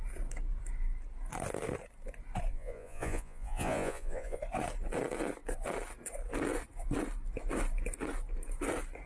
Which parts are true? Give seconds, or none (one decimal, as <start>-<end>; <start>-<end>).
0.0-2.5; 4.4-9.1